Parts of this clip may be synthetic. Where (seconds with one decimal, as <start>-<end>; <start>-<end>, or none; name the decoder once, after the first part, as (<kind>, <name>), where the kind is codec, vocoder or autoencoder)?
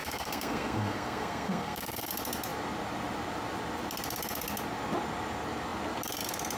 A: 0.0-2.1 (codec, SNAC)